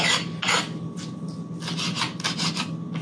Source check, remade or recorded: recorded